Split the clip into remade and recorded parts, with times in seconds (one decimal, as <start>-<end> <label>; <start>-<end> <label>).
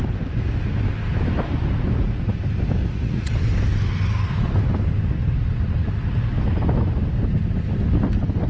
0.0-2.8 recorded; 2.8-3.3 remade; 3.3-8.5 recorded